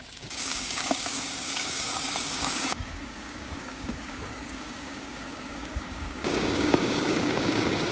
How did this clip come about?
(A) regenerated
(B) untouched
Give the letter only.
A